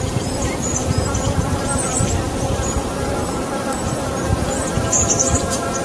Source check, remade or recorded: remade